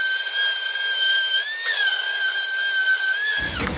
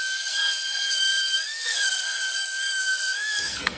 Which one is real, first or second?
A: first